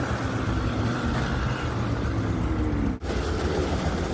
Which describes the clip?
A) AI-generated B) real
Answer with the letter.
B